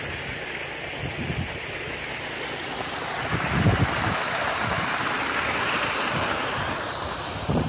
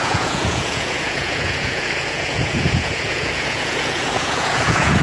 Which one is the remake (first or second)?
second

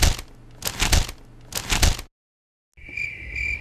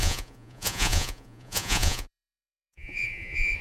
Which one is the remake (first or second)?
second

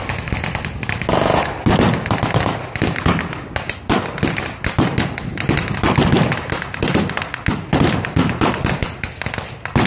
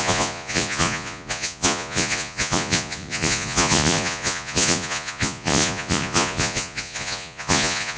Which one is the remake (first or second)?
second